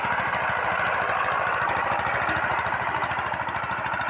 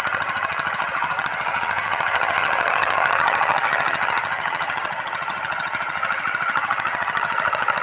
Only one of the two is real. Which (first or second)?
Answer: first